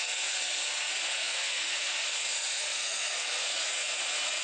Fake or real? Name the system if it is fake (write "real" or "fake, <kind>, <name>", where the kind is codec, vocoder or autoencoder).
fake, codec, SNAC